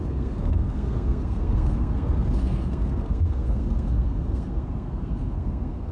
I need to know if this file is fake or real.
fake